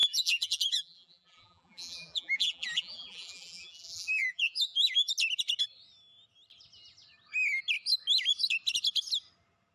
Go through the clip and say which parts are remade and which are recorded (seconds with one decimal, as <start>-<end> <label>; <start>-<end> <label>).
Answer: 0.0-5.1 remade; 5.1-9.7 recorded